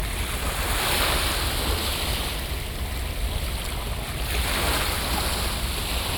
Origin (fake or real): real